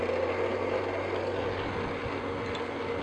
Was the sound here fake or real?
real